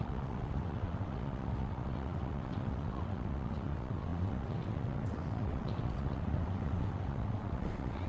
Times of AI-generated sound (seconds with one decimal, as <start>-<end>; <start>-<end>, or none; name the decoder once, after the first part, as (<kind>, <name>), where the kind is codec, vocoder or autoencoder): 0.0-8.1 (vocoder, WaveNeXt)